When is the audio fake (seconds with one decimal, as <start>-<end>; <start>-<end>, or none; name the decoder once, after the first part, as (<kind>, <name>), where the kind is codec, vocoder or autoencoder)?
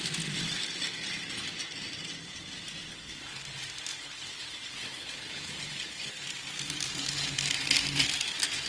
2.9-3.4 (codec, HILCodec); 3.9-6.1